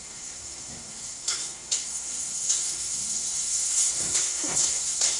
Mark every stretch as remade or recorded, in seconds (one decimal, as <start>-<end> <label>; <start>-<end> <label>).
0.0-5.2 remade

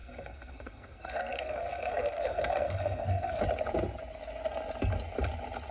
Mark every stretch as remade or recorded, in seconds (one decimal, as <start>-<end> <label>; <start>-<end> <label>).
0.0-3.4 remade; 3.4-5.7 recorded

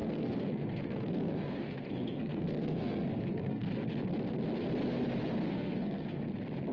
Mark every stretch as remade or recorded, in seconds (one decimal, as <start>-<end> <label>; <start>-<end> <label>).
0.0-3.7 remade; 3.7-5.5 recorded; 5.5-6.2 remade; 6.2-6.7 recorded